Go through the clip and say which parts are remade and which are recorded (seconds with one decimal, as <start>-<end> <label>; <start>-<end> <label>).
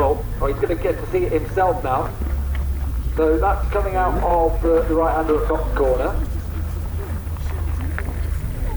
0.0-4.3 recorded; 4.3-5.5 remade; 5.5-7.2 recorded; 7.2-7.9 remade; 7.9-8.8 recorded